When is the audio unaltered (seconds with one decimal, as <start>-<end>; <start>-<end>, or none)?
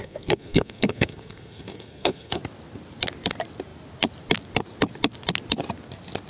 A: 2.4-6.3